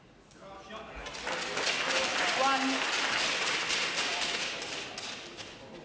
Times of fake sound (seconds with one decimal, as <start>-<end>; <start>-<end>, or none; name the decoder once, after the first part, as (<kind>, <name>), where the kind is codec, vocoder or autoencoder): 4.1-4.9 (vocoder, BigVGAN v2)